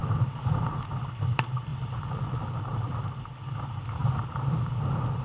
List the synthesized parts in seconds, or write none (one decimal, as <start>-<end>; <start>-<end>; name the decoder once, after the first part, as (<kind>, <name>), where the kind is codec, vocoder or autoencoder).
none